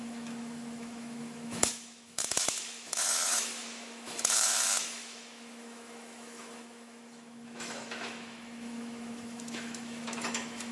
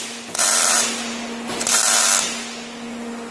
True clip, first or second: second